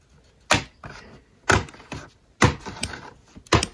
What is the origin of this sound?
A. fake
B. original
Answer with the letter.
B